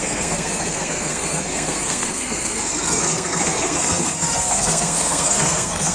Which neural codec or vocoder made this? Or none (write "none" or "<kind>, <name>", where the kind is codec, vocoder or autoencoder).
codec, SNAC